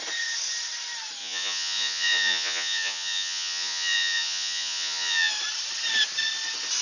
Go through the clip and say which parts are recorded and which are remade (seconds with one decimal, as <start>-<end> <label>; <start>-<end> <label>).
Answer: 0.0-1.2 recorded; 1.2-5.3 remade; 5.3-6.8 recorded